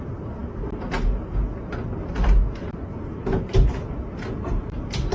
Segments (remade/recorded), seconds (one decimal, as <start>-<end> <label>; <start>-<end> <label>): 0.0-0.4 remade; 0.4-2.1 recorded; 2.1-5.1 remade